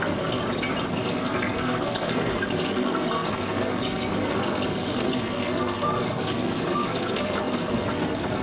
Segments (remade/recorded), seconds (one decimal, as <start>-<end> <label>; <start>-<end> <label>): 0.0-0.4 remade; 0.4-0.9 recorded; 0.9-8.4 remade